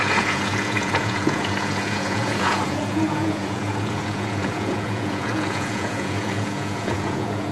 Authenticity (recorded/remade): remade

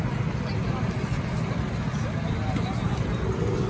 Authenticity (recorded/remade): recorded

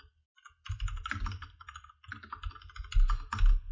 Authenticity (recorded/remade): recorded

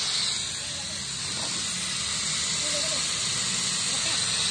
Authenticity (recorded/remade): recorded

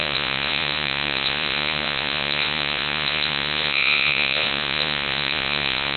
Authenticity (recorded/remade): remade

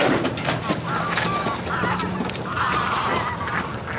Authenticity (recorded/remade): recorded